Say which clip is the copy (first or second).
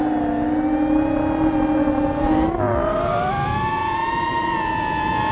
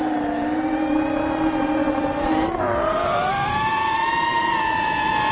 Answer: second